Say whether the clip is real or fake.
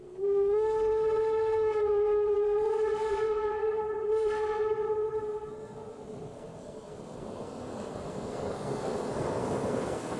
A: fake